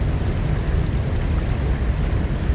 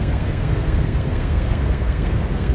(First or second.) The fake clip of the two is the second